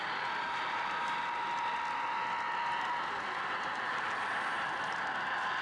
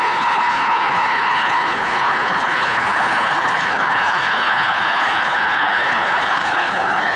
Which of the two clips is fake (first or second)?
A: second